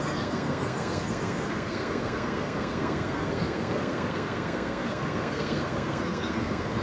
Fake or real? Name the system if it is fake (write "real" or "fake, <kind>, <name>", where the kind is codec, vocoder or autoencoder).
fake, codec, SNAC